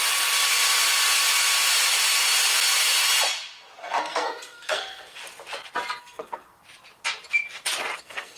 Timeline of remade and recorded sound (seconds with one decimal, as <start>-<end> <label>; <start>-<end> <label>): 0.0-3.8 recorded; 3.8-5.2 remade; 5.2-6.0 recorded; 6.0-6.6 remade; 6.6-8.0 recorded; 8.0-8.4 remade